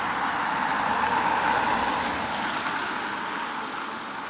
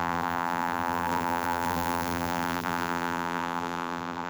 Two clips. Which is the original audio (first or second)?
first